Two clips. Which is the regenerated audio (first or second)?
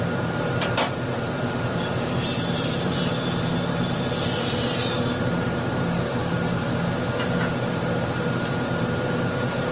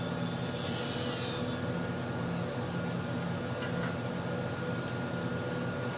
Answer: first